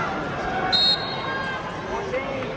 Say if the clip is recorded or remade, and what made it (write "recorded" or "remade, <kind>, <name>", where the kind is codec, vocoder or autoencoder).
recorded